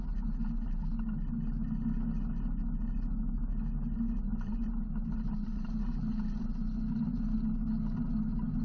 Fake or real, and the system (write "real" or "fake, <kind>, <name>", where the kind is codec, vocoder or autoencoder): real